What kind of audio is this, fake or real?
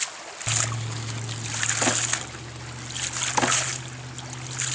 real